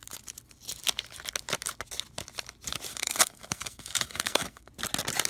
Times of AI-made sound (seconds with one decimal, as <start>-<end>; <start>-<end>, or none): 2.9-4.7